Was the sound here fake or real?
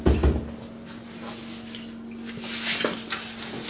real